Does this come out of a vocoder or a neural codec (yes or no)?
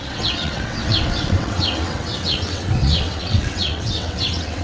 yes